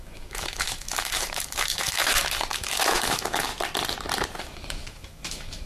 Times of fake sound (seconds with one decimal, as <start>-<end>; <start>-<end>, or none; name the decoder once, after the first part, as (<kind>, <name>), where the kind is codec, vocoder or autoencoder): 0.0-3.5 (autoencoder, DAC-VAE); 4.4-5.7